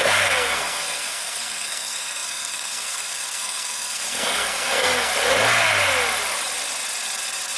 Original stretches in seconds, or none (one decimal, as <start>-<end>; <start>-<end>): 5.1-7.6